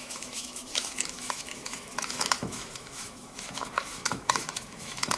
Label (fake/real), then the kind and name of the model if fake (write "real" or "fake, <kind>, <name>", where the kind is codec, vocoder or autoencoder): fake, autoencoder, DAC-VAE